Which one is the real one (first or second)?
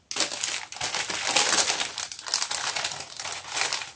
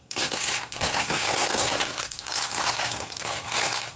first